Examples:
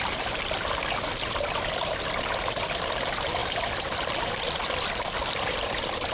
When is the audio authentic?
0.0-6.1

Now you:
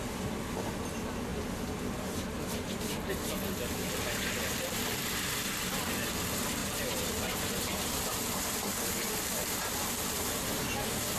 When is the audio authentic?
0.0-6.6; 10.5-11.2

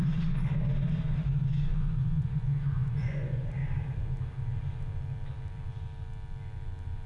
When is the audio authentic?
0.0-1.7; 3.4-7.1

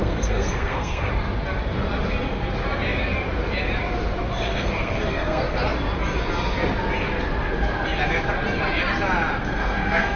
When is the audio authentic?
1.1-4.5; 5.6-9.4

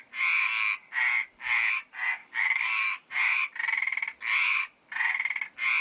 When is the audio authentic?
0.0-2.2; 3.1-5.8

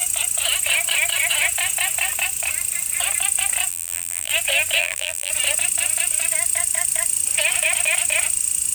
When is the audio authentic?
0.0-3.7; 4.3-4.8; 5.3-8.7

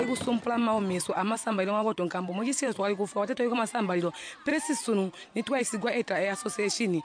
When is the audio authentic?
0.0-0.6; 3.7-7.0